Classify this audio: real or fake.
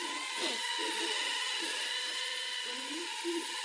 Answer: fake